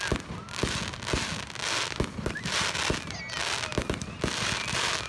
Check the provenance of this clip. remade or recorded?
recorded